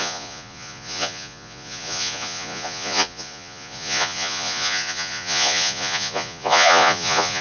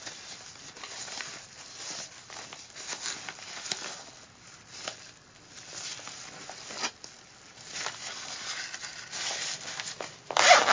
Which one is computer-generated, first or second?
first